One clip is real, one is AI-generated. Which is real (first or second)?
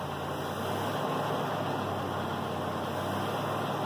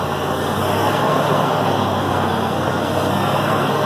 first